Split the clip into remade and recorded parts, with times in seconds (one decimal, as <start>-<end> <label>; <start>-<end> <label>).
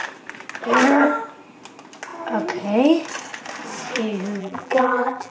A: 0.0-4.4 recorded; 4.4-5.3 remade